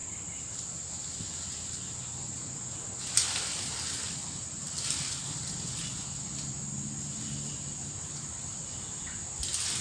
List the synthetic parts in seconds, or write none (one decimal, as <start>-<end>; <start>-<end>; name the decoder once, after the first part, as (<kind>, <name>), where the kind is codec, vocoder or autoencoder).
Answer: 0.0-0.7 (vocoder, BigVGAN v2)